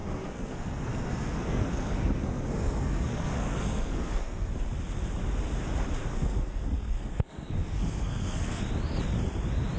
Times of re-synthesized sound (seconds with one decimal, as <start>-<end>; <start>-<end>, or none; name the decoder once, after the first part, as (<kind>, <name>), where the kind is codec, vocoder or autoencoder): 0.0-4.5 (codec, SNAC); 6.1-8.6